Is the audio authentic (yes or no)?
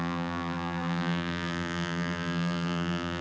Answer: no